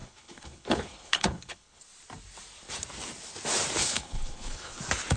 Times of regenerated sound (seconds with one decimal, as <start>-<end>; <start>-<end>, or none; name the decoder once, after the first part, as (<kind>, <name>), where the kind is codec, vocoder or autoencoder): 0.0-1.8 (codec, HILCodec); 3.8-4.8

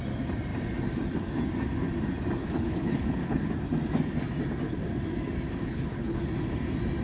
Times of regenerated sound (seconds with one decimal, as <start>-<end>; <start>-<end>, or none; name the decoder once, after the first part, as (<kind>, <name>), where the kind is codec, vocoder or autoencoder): 2.4-3.5 (codec, HILCodec); 5.6-6.2

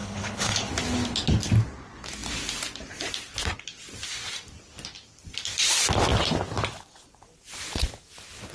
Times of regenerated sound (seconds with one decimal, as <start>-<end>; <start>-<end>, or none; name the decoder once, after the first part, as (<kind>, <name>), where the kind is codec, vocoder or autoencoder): 0.0-0.7 (codec, HILCodec)

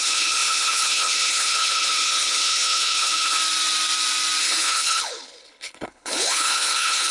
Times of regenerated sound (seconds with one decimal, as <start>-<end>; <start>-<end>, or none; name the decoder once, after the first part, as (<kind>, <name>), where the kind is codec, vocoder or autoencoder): 0.0-3.4 (codec, HILCodec); 4.4-7.1